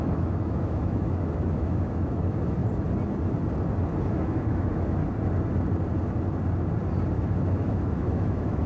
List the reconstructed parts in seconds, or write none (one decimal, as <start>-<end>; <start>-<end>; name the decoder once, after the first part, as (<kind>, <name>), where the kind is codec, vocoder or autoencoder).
0.0-2.6 (autoencoder, DAC-VAE); 4.1-5.0; 7.1-8.7